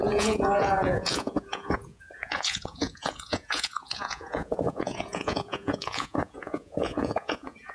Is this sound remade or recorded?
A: remade